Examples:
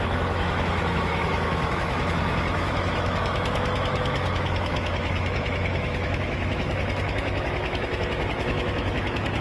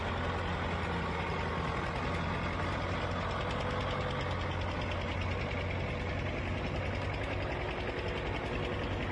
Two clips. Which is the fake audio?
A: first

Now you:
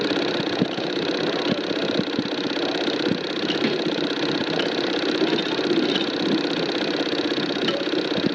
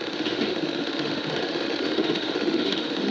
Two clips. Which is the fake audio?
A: second